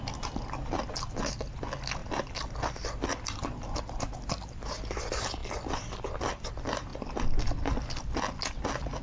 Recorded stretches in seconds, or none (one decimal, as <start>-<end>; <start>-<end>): 0.0-9.0